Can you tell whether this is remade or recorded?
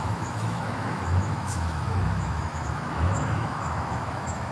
remade